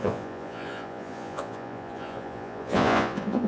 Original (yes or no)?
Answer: no